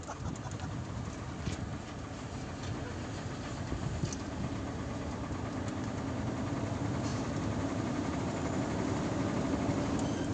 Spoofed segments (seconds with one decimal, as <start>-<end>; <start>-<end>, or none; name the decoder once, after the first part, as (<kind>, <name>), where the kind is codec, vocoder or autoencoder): 7.1-8.2 (vocoder, BigVGAN v2)